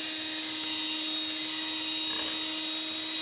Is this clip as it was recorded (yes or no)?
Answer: yes